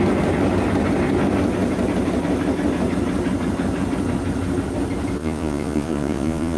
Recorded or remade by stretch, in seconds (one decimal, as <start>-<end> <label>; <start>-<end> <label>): 0.0-5.2 recorded; 5.2-6.6 remade